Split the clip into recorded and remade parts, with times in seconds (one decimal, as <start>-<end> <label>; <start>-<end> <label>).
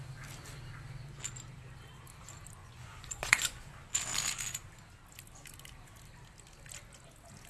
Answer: 0.0-2.6 recorded; 2.6-3.7 remade; 3.7-7.5 recorded